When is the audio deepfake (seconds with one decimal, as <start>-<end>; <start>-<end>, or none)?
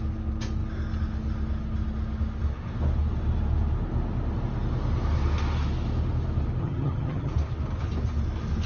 6.6-7.3